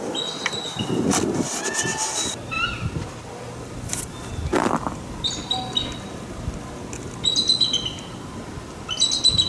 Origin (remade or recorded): recorded